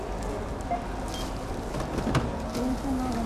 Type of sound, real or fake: real